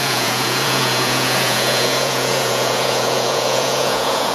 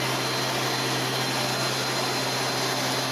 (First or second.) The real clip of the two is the second